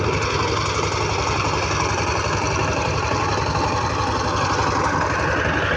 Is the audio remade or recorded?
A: recorded